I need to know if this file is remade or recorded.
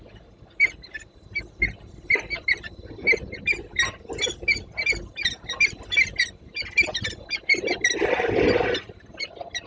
recorded